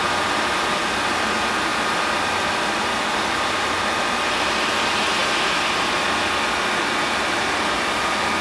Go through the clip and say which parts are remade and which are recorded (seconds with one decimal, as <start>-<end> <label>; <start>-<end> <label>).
0.0-8.4 recorded